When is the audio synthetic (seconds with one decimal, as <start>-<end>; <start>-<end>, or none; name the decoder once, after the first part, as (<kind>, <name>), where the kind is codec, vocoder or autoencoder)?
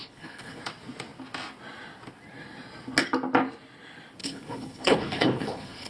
0.0-0.6 (codec, HILCodec); 4.2-5.9